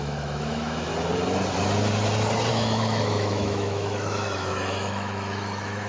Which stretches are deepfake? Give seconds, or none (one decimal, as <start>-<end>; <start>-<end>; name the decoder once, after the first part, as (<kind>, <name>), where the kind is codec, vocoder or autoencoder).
0.0-0.9 (autoencoder, DAC-VAE); 2.5-5.9